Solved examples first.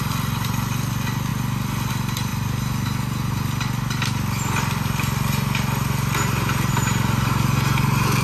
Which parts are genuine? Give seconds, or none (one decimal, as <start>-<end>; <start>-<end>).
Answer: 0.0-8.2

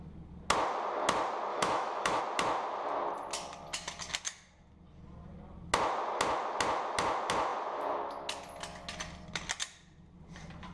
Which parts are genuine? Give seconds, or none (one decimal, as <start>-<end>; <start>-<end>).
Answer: 0.0-1.5; 2.2-10.7

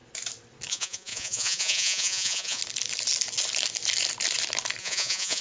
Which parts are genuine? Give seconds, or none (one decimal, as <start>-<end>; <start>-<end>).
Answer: 0.0-0.7; 2.6-4.8